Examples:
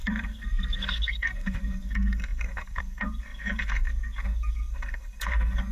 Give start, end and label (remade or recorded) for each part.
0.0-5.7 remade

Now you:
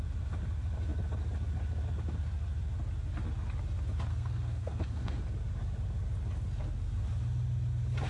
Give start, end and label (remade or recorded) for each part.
0.0-4.1 recorded; 4.1-5.2 remade; 5.2-8.1 recorded